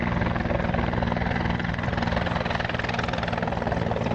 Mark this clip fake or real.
real